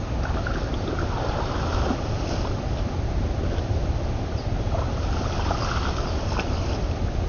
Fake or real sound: real